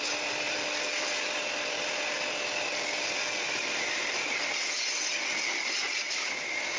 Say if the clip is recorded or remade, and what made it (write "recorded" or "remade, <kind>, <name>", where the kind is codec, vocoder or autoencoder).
remade, vocoder, BigVGAN v2